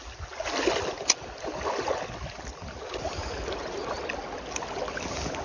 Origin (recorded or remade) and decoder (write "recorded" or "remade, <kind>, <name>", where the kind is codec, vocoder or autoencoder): recorded